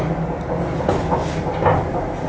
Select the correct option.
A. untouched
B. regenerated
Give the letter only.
A